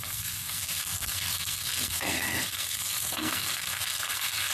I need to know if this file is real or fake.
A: fake